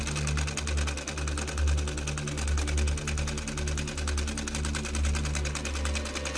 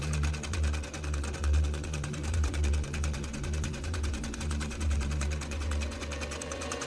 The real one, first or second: first